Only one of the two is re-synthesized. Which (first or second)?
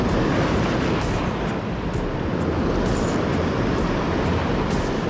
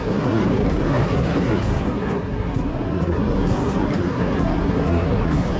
second